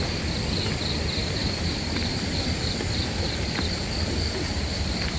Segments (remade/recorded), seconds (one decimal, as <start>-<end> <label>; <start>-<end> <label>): 0.0-1.4 recorded; 1.4-4.5 remade; 4.5-5.2 recorded